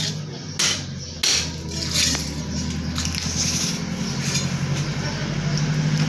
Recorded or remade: recorded